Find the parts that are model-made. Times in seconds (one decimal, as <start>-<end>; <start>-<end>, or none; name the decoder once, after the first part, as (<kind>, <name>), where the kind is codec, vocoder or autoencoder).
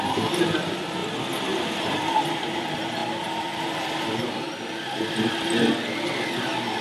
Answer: none